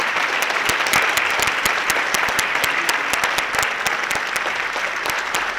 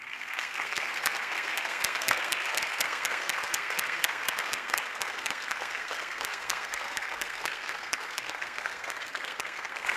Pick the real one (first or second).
first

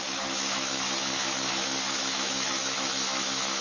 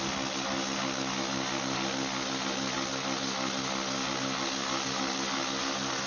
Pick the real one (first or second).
second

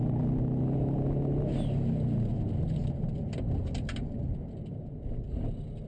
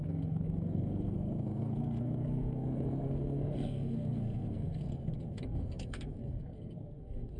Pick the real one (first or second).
first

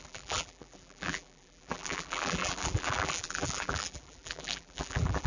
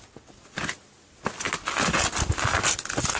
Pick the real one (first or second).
second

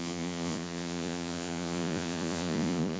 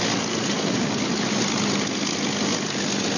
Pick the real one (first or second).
second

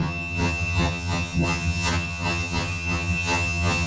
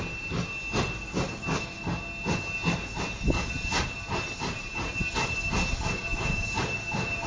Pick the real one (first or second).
second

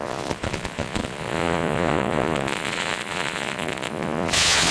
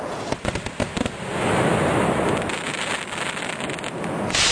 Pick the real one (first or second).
second